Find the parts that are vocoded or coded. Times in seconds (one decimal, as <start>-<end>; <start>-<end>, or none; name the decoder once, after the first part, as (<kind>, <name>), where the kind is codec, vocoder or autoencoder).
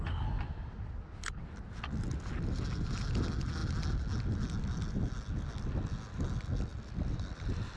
none